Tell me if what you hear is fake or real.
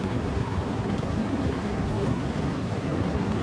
fake